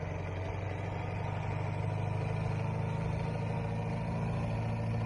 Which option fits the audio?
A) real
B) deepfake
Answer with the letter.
A